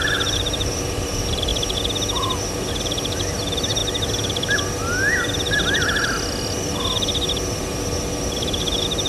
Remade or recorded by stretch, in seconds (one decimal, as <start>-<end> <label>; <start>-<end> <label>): 0.0-1.5 remade; 1.5-2.7 recorded; 2.7-3.8 remade; 3.8-8.4 recorded; 8.4-9.1 remade